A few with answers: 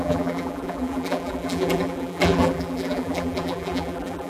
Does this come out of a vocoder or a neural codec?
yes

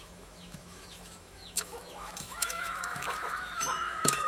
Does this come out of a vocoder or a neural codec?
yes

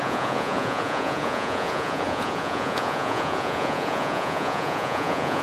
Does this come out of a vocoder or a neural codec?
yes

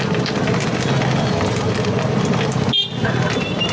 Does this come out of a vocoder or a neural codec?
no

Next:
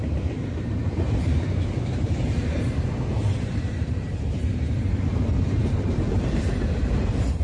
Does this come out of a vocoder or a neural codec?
yes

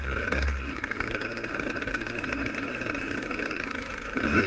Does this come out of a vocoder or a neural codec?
yes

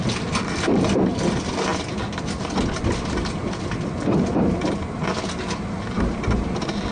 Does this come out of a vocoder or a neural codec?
no